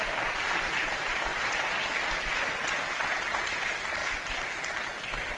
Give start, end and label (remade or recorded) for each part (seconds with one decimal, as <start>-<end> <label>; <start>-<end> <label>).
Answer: 0.0-5.4 recorded